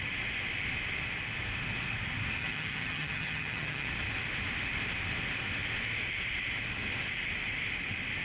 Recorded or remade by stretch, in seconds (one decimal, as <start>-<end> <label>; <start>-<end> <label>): 0.0-2.4 recorded; 2.4-3.9 remade; 3.9-8.2 recorded